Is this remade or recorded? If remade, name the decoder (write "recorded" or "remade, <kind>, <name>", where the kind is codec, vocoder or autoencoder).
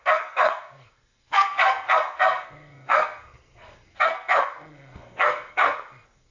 remade, codec, SNAC